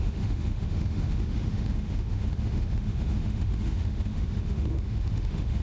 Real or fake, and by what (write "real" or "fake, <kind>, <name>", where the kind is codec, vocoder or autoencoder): fake, autoencoder, DAC-VAE